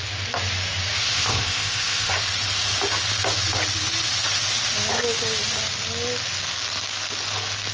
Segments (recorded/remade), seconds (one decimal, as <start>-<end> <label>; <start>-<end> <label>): 0.0-1.0 recorded; 1.0-2.1 remade; 2.1-7.7 recorded